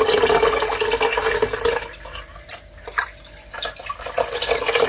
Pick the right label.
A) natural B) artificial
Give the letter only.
A